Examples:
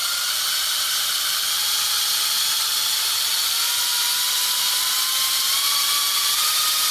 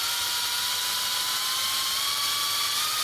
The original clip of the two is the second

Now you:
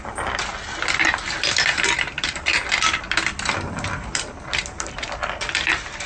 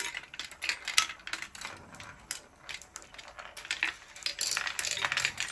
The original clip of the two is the second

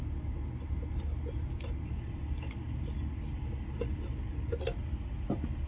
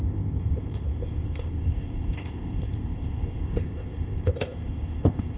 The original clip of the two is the first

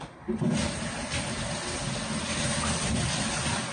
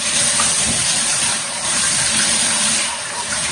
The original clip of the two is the first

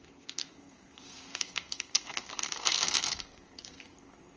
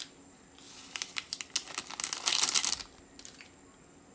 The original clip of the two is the second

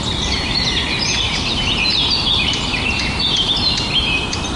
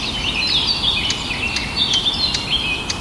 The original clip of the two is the second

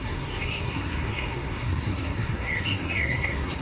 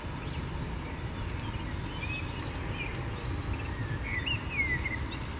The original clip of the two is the second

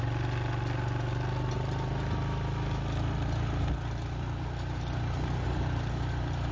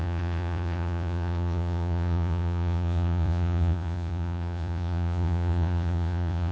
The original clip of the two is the first